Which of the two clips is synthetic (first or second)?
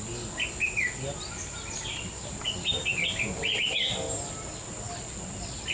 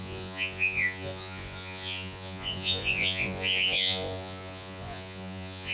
second